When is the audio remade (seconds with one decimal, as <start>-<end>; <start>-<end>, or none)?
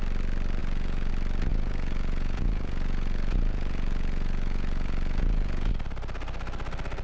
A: 0.6-1.1; 1.5-5.7